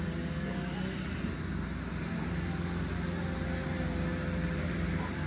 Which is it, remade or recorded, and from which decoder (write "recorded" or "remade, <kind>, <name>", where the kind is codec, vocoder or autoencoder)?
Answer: recorded